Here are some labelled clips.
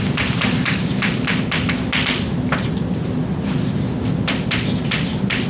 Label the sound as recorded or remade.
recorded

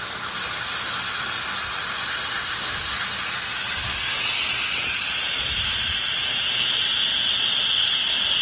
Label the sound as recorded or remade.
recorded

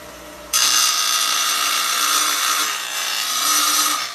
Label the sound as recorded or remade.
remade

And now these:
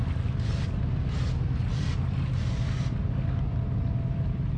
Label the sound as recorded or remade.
recorded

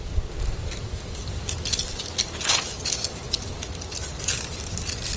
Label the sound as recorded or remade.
recorded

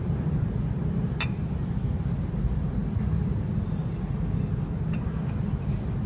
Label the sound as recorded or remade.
recorded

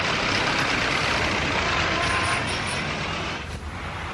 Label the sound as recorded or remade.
remade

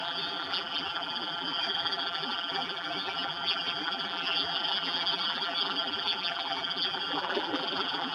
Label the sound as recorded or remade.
remade